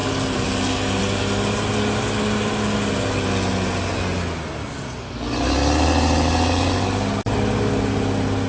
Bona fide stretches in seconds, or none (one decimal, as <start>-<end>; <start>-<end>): 0.0-8.5